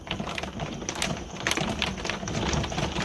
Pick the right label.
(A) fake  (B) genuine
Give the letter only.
B